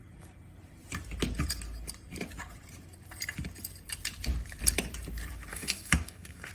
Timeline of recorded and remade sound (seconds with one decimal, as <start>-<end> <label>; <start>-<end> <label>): 0.0-5.5 recorded; 5.5-6.5 remade